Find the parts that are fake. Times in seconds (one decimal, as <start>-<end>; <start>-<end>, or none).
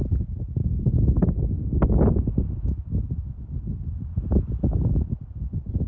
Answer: none